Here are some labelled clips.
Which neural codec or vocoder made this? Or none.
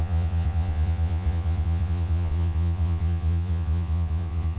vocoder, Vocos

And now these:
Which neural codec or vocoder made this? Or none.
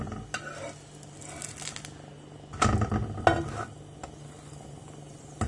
none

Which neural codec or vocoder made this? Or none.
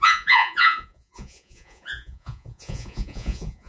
vocoder, Vocos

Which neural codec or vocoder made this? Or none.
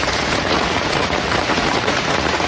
vocoder, Vocos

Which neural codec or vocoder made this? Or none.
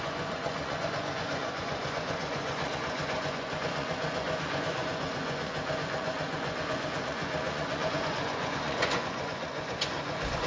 vocoder, Vocos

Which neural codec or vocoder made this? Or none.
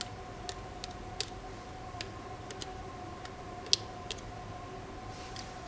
none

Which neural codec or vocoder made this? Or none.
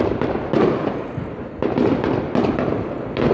none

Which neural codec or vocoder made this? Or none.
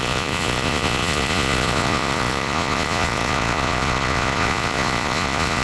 vocoder, Vocos